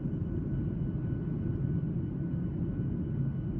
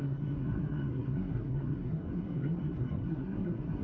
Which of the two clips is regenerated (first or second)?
second